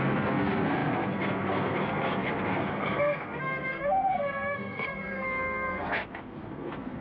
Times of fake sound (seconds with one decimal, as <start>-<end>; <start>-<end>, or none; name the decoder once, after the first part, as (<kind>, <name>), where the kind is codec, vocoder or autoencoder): 0.0-7.0 (codec, SNAC)